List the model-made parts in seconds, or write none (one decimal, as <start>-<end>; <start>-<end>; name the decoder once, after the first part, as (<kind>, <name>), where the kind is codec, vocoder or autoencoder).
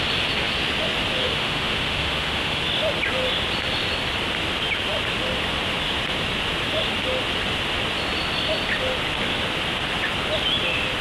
1.2-2.6 (autoencoder, DAC-VAE)